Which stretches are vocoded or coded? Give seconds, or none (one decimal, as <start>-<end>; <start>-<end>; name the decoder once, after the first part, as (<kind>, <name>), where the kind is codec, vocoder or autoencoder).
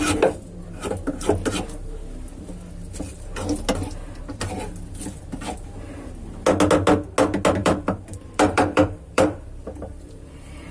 7.6-10.7 (vocoder, BigVGAN v2)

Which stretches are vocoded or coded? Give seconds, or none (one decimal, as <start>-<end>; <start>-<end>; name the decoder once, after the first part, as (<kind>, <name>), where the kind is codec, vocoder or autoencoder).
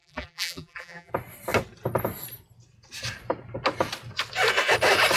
0.0-1.1 (vocoder, BigVGAN v2)